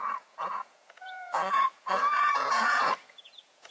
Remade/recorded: remade